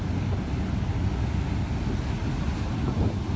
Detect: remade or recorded recorded